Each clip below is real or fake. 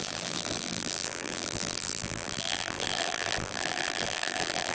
fake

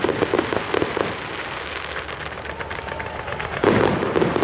real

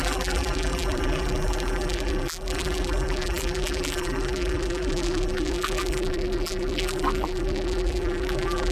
fake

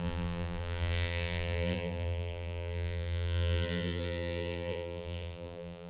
fake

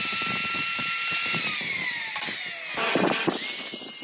real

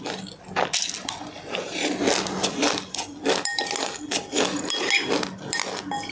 real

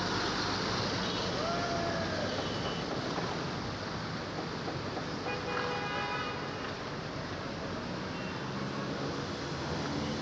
real